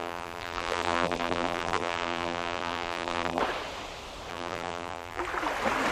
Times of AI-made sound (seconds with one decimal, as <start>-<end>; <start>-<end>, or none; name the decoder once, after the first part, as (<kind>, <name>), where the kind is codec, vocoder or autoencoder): 0.0-3.4 (vocoder, BigVGAN v2); 4.3-5.2